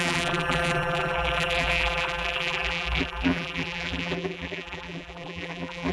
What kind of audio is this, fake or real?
fake